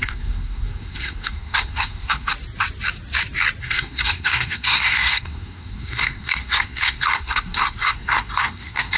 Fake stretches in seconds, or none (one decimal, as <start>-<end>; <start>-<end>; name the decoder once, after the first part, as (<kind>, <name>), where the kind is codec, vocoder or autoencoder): 0.0-2.3 (codec, SNAC); 3.6-9.0